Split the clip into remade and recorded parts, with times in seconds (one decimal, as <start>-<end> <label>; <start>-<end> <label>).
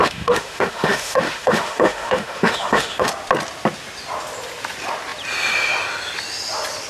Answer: 0.0-3.1 remade; 3.1-6.9 recorded